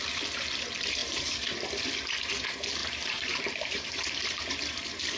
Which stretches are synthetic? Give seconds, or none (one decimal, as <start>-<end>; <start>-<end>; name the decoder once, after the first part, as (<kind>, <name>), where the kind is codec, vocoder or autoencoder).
2.8-4.4 (vocoder, BigVGAN v2)